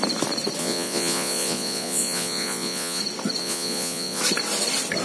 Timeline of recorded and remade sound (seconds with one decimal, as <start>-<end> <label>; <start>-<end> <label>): 0.0-0.6 recorded; 0.6-3.0 remade; 3.0-3.4 recorded; 3.4-4.2 remade; 4.2-5.0 recorded